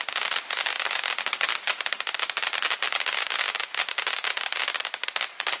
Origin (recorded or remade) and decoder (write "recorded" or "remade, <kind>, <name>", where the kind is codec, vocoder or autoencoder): recorded